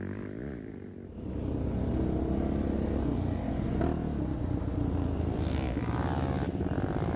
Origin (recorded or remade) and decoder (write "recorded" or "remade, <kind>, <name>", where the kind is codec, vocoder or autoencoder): recorded